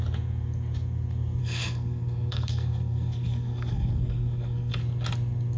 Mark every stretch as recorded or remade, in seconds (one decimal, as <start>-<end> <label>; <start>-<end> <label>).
0.0-1.4 recorded; 1.4-4.8 remade; 4.8-5.6 recorded